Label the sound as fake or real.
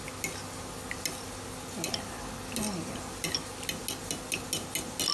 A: real